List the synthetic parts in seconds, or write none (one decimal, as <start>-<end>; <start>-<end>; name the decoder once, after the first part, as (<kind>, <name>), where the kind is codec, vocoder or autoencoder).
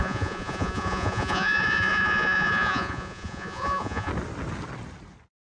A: 0.0-4.1 (vocoder, Vocos)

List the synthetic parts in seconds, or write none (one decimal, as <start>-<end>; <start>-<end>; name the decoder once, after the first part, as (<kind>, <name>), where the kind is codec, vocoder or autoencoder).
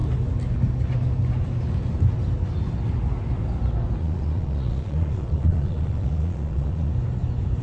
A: 4.0-6.9 (vocoder, Vocos)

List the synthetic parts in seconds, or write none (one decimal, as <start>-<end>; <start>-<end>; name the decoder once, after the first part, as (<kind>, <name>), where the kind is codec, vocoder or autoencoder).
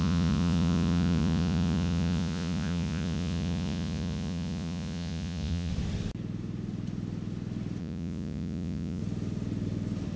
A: 0.0-5.7 (vocoder, Vocos); 7.8-9.0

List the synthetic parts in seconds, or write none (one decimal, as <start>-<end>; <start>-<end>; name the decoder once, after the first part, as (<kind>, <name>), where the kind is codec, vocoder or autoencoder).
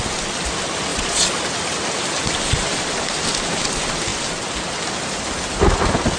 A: 0.9-1.4 (vocoder, Vocos)